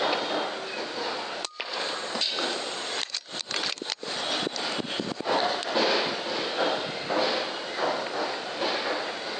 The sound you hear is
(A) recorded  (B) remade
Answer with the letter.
A